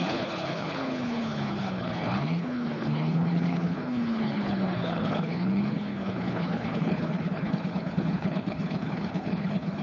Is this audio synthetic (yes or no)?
yes